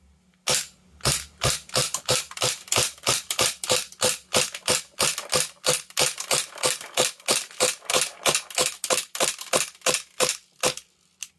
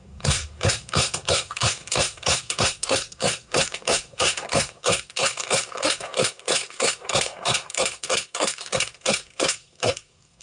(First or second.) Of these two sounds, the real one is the first